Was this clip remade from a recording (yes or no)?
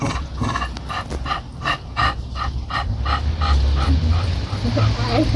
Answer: no